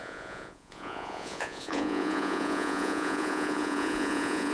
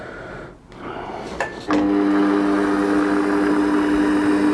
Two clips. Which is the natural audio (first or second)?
second